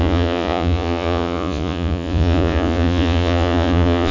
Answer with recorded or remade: remade